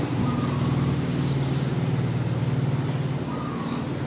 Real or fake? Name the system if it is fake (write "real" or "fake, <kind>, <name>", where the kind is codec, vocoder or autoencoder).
real